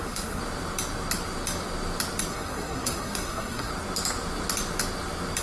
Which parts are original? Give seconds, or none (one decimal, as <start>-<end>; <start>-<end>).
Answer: 0.4-2.3; 3.7-5.4